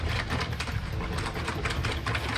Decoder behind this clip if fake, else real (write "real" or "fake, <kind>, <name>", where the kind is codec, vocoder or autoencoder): real